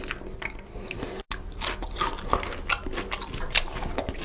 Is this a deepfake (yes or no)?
no